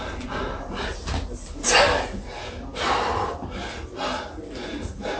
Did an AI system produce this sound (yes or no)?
no